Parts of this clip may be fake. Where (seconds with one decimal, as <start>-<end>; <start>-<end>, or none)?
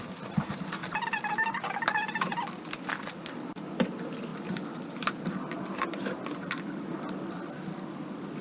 0.8-3.6; 4.3-7.5